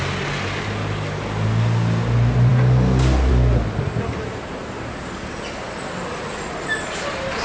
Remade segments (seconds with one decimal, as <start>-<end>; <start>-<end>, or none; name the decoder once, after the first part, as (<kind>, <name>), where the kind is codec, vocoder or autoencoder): none